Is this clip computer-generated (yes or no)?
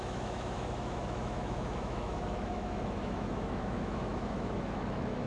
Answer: yes